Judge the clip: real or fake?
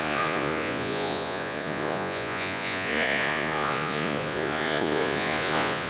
fake